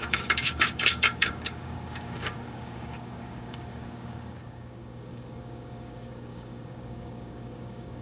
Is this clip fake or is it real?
fake